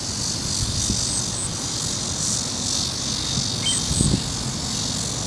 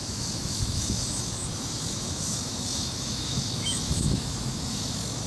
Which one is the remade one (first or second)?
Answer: second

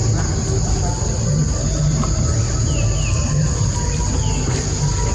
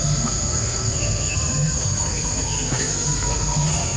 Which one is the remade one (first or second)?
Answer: second